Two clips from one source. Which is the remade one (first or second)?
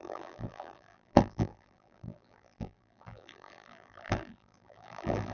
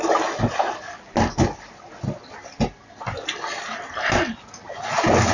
first